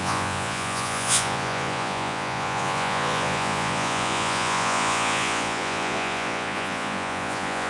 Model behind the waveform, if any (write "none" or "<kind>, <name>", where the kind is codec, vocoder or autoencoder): vocoder, Vocos